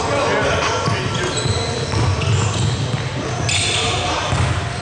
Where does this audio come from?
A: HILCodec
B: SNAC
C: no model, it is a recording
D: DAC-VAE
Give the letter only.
C